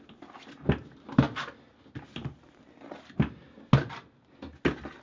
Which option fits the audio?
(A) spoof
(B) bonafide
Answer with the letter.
B